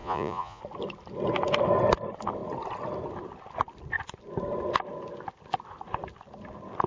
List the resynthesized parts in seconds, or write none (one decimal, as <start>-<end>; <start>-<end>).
0.0-0.6